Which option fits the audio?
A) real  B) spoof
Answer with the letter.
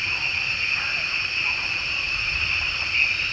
A